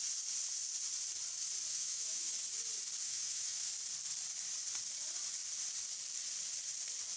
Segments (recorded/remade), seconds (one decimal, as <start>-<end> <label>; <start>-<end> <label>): 0.0-1.7 recorded; 1.7-2.3 remade; 2.3-3.0 recorded; 3.0-3.7 remade; 3.7-7.2 recorded